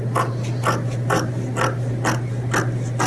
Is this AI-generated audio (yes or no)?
no